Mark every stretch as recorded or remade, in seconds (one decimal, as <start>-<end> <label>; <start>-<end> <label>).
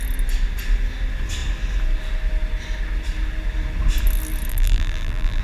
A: 0.0-4.5 recorded; 4.5-5.4 remade